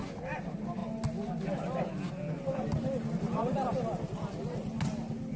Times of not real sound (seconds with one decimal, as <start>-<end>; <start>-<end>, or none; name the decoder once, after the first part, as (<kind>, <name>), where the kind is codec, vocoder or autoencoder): none